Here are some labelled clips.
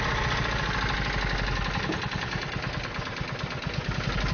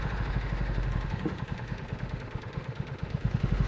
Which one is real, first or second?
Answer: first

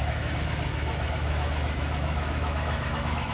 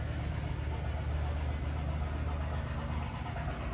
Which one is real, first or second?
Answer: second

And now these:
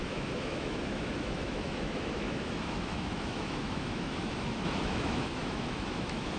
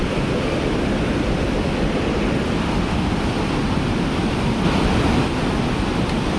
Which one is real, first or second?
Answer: second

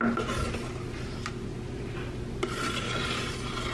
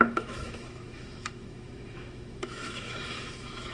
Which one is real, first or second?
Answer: first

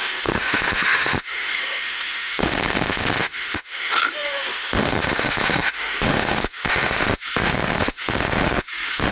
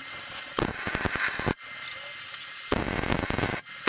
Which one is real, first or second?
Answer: second